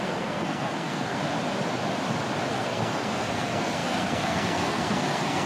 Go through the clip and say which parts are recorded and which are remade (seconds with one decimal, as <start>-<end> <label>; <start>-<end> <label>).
0.0-1.2 remade; 1.2-2.5 recorded; 2.5-5.5 remade